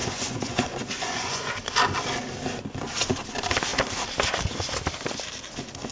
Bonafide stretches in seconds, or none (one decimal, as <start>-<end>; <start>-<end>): 1.5-5.9